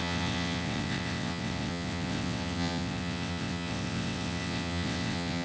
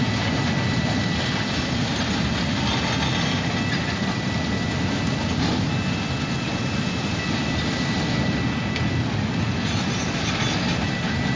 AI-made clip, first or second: first